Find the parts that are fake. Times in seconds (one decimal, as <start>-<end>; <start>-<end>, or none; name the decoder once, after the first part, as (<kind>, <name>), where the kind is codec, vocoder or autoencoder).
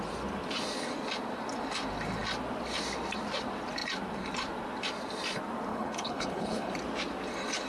5.7-6.7 (codec, HILCodec)